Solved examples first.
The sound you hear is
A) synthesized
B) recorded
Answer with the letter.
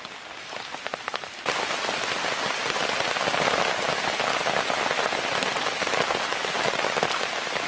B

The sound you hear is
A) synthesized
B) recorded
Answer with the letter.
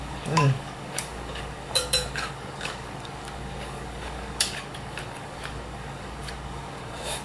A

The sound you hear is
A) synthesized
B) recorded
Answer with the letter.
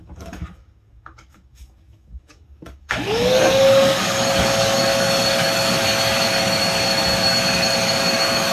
A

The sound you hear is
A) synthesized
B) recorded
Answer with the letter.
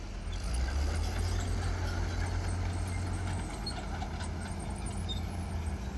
B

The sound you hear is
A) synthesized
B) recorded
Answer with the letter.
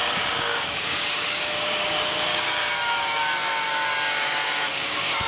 A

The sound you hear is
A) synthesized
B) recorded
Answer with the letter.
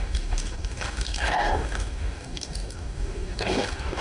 A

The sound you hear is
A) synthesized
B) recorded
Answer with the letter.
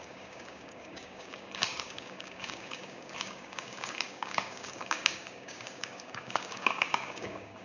A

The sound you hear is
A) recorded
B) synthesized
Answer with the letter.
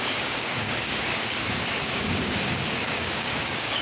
B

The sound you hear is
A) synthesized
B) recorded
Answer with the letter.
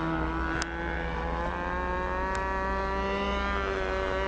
B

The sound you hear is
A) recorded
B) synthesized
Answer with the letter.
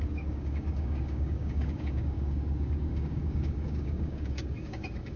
B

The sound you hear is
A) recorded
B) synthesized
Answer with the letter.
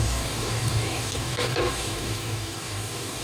B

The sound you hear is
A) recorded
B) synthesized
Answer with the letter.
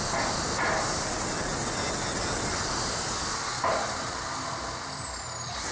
A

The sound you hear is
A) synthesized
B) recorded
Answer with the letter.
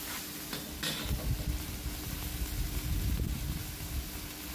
B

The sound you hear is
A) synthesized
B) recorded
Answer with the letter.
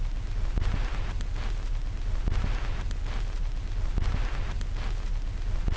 B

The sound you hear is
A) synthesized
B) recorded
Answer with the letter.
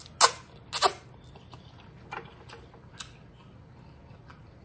B